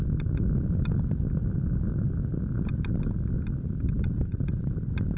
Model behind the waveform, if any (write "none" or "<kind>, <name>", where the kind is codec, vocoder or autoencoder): none